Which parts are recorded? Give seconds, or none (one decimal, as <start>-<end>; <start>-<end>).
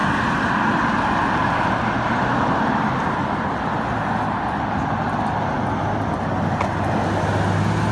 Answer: 0.0-7.9